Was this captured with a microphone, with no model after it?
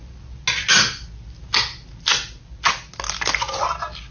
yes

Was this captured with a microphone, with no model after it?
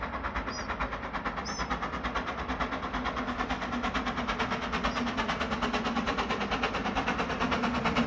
yes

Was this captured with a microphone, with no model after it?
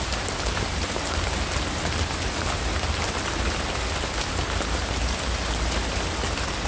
yes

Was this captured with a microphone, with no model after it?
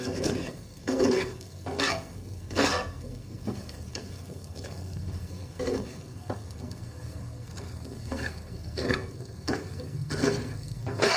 no